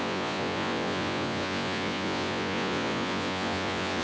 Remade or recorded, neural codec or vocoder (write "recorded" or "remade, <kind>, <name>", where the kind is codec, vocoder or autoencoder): remade, vocoder, Vocos